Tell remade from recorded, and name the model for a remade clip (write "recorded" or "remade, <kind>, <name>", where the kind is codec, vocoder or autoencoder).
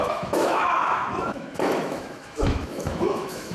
remade, autoencoder, DAC-VAE